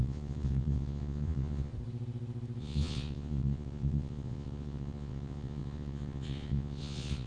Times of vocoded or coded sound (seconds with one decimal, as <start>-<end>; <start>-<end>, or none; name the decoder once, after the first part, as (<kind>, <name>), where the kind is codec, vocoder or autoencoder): 0.0-1.7 (vocoder, Vocos); 2.6-7.3